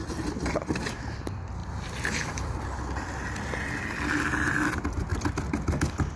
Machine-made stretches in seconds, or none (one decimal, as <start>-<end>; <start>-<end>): 1.6-2.6; 5.1-5.8